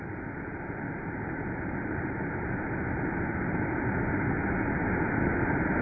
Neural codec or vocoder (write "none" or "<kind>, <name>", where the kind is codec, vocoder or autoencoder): none